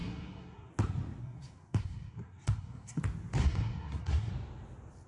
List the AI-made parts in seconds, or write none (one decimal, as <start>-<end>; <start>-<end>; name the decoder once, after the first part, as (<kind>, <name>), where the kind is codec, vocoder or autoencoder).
0.0-0.7 (codec, SNAC); 1.2-3.0; 3.4-4.3